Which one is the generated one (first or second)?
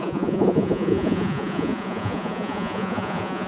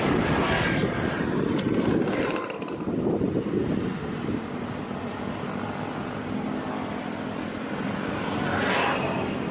first